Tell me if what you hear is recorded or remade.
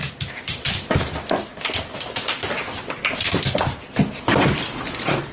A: recorded